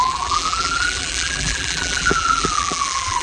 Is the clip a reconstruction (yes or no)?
yes